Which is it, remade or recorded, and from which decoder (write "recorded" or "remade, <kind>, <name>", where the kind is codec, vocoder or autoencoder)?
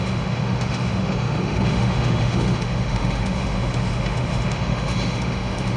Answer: remade, autoencoder, DAC-VAE